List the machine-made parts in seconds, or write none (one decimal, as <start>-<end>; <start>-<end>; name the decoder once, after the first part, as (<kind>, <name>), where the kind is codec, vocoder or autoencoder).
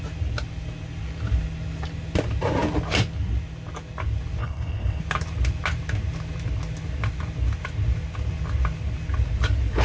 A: 4.4-5.0 (codec, HILCodec)